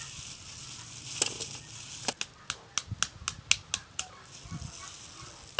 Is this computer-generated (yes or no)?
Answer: no